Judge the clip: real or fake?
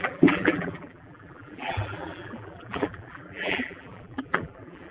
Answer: fake